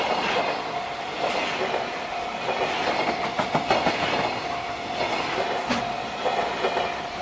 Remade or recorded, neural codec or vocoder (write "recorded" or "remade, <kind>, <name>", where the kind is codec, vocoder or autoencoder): recorded